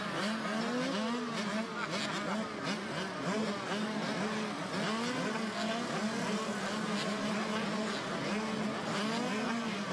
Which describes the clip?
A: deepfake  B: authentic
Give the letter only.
B